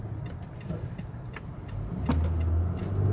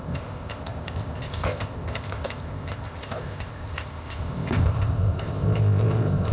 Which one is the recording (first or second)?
first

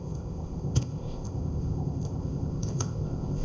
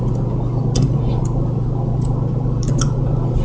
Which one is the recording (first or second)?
second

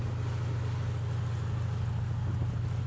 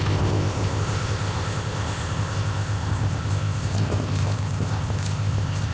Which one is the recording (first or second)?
first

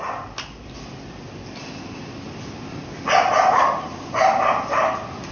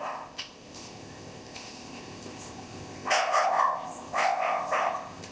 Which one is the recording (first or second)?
first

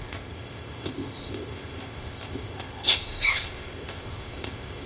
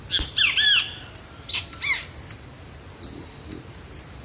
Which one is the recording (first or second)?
second